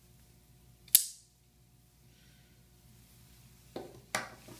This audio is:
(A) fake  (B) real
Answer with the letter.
B